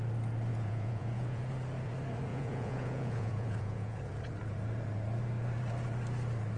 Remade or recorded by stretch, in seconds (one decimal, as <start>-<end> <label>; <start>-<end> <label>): 0.0-0.5 recorded; 0.5-1.4 remade; 1.4-2.3 recorded; 2.3-4.0 remade; 4.0-6.6 recorded